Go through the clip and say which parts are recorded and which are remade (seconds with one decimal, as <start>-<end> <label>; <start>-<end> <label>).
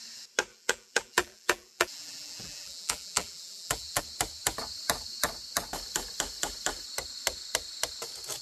0.0-0.5 recorded; 0.5-4.0 remade; 4.0-8.4 recorded